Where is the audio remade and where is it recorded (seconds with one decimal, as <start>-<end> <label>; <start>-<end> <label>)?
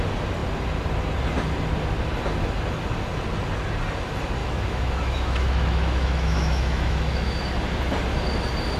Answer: 0.0-4.4 recorded; 4.4-7.4 remade; 7.4-8.8 recorded